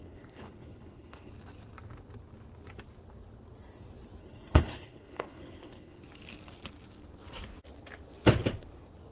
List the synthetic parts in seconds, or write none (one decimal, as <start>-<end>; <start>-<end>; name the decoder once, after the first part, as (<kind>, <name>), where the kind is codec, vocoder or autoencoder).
0.0-1.3 (codec, HILCodec); 4.2-6.0